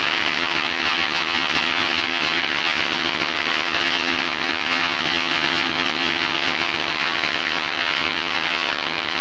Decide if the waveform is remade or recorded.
remade